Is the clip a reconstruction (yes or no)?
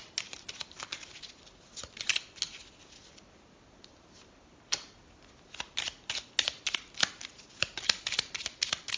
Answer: no